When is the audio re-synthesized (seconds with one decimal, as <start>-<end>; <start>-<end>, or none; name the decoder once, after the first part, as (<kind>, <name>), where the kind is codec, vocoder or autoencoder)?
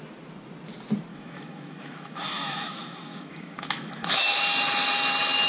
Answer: 1.1-4.4 (autoencoder, DAC-VAE)